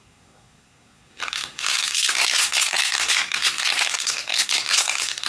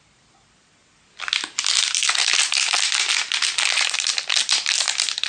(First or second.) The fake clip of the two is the first